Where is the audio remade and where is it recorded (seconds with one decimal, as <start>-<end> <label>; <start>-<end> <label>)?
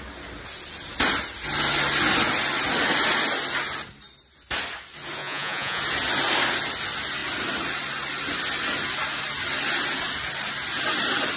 0.0-5.2 recorded; 5.2-5.8 remade; 5.8-11.4 recorded